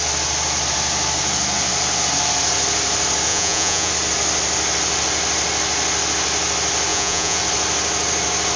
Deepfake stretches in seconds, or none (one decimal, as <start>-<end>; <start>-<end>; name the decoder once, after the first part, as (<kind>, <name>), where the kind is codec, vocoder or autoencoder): 3.3-3.9 (vocoder, Vocos); 6.9-7.4